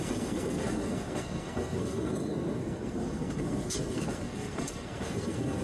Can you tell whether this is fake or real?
fake